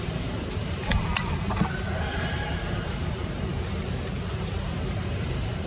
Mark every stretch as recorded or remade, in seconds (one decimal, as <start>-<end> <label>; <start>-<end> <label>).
0.0-0.9 remade; 0.9-2.1 recorded; 2.1-3.5 remade; 3.5-4.2 recorded; 4.2-5.7 remade